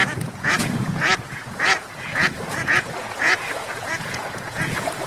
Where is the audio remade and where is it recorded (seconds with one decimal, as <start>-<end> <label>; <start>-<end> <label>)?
0.0-5.1 remade